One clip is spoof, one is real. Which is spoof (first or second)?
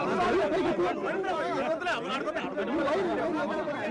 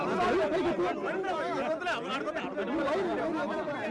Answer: first